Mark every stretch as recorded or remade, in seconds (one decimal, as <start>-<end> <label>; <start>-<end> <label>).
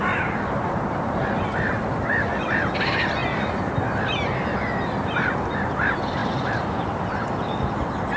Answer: 0.0-8.2 recorded